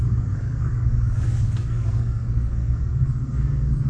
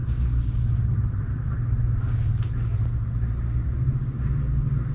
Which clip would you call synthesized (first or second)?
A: first